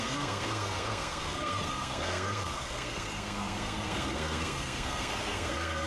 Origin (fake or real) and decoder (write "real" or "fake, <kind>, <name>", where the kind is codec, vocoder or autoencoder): fake, codec, SNAC